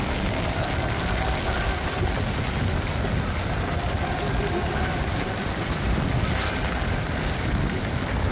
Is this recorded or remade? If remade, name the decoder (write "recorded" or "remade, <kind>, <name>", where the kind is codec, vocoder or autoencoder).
recorded